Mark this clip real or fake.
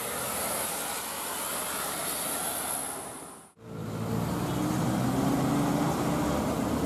real